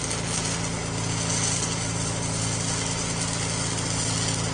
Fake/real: real